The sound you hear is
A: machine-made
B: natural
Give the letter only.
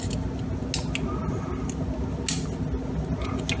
B